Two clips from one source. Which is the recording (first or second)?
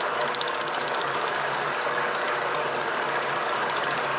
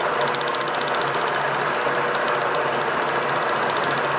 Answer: second